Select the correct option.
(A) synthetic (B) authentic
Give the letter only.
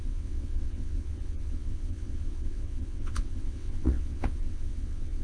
A